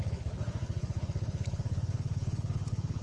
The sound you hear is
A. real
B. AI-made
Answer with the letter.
B